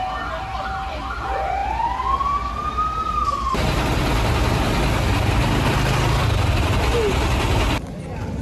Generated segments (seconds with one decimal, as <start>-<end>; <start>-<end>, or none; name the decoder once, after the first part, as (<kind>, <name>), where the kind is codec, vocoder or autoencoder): none